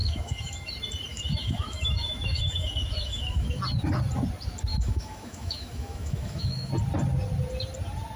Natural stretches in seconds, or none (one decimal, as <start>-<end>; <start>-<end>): 0.7-1.1; 3.6-4.7; 6.7-8.2